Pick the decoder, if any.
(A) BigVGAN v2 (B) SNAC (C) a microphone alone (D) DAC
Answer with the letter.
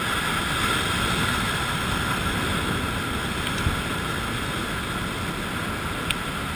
C